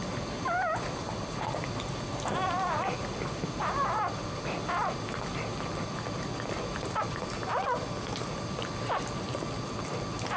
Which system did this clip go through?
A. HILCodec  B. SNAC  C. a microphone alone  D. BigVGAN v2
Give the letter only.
C